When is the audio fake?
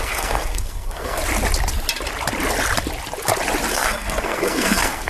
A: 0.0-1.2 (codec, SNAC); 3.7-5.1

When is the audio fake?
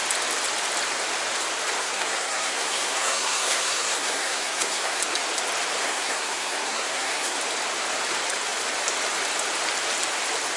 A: 1.8-5.0 (codec, SNAC); 5.8-7.4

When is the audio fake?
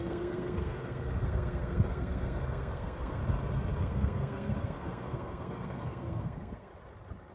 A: 0.0-3.2 (codec, SNAC); 3.8-6.7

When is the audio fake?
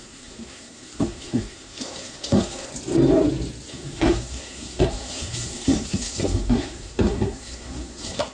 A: 0.0-2.7 (codec, SNAC); 3.7-8.3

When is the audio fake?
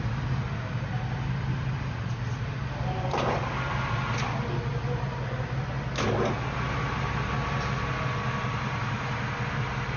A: none